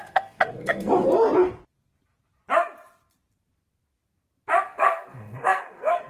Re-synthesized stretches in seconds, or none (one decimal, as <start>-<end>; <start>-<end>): 0.0-0.9; 4.6-6.1